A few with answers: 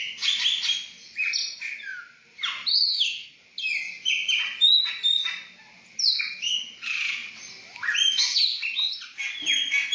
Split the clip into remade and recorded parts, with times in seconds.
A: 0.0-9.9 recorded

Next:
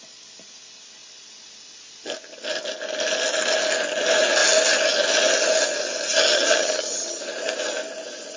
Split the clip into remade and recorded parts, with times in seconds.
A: 0.0-6.3 recorded; 6.3-7.2 remade; 7.2-8.4 recorded